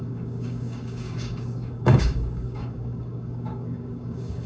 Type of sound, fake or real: fake